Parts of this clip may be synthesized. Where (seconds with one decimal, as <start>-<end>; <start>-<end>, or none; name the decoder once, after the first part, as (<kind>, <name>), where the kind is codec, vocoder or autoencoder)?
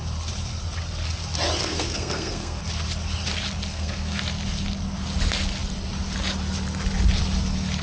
1.6-2.6 (codec, SNAC); 3.7-4.2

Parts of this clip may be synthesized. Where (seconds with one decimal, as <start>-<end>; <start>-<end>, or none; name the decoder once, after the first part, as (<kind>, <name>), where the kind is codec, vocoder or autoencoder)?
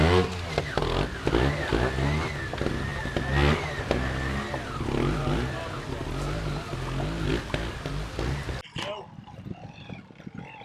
none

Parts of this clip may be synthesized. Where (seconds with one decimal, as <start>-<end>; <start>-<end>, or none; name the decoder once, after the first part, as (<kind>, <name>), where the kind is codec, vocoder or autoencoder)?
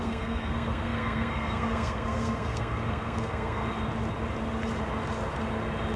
0.0-3.6 (codec, SNAC)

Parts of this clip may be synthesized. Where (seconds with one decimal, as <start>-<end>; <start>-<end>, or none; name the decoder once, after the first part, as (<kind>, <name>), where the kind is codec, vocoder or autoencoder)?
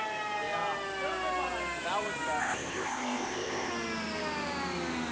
2.4-3.7 (codec, ZipCodec)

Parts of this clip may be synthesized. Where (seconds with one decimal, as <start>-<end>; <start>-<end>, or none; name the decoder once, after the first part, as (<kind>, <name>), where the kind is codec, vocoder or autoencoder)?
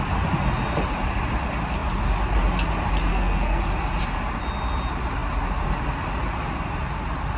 3.1-3.6 (codec, SNAC)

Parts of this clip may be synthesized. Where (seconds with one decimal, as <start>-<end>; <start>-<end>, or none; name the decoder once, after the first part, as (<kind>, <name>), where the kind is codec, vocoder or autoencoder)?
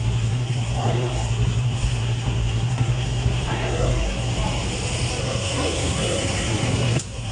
0.0-4.3 (codec, SNAC); 5.2-7.3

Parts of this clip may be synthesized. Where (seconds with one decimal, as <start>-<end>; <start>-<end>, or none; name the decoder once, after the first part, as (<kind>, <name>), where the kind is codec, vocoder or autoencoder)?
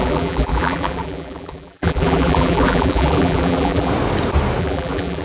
0.0-3.9 (vocoder, BigVGAN v2); 4.6-5.2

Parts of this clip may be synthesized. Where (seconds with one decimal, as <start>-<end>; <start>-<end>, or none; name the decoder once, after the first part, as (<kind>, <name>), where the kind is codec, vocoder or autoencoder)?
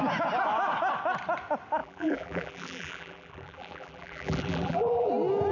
1.8-5.1 (vocoder, BigVGAN v2)